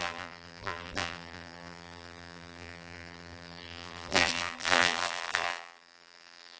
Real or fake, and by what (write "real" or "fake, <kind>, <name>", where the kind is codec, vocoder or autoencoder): fake, vocoder, BigVGAN v2